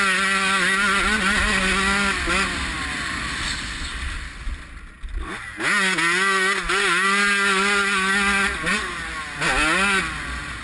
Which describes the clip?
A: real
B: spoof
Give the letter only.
A